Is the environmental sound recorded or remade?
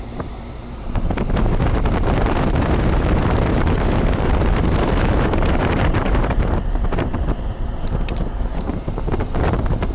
remade